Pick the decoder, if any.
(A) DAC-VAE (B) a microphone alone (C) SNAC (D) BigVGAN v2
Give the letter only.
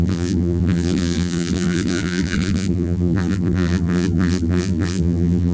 D